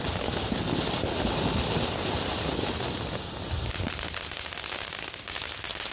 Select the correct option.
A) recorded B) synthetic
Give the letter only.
A